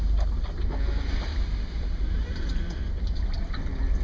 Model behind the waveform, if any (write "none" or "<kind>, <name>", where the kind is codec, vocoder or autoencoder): none